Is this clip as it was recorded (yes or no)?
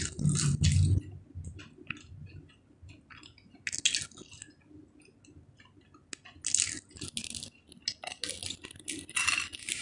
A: yes